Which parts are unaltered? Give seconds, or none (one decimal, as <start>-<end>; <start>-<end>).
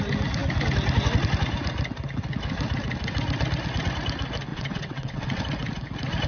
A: 0.0-4.5; 5.4-6.3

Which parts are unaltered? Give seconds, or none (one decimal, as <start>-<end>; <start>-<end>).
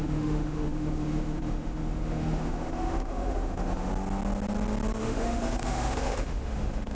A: 3.9-5.0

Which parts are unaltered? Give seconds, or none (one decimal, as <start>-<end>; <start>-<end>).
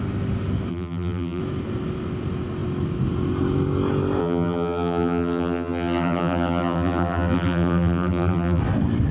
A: 0.0-0.7; 1.4-4.2; 8.6-9.1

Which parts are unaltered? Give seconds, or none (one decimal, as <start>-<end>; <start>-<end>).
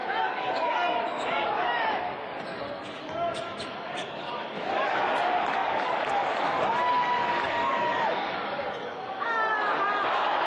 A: none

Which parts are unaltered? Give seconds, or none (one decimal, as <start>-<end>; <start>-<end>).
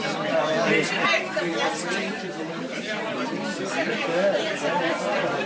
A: 0.0-5.5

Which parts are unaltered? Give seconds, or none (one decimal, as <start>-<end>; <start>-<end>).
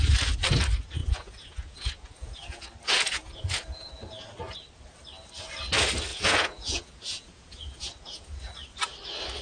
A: 0.0-1.0; 2.6-3.2; 3.9-6.1; 8.4-9.4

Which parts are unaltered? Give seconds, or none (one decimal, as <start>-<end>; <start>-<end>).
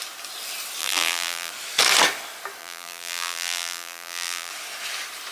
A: 0.0-0.8; 1.5-2.6; 4.5-5.3